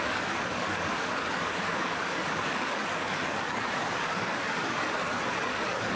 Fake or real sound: fake